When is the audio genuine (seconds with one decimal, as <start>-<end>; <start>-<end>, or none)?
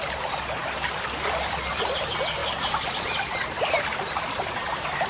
0.0-5.1